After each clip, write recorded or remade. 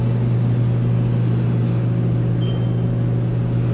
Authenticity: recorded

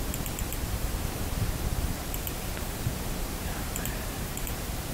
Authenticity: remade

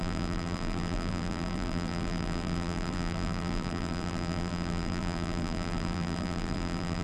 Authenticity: remade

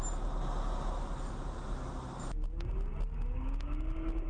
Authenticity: recorded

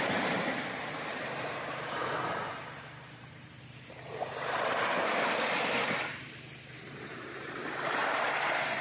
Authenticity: remade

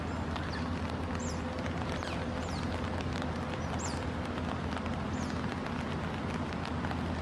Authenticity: recorded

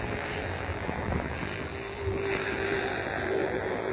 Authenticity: remade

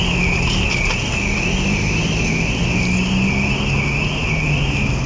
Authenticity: recorded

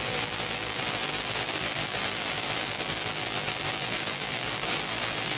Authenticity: remade